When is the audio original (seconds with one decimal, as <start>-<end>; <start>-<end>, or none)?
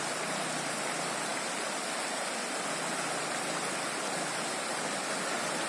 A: 0.0-5.7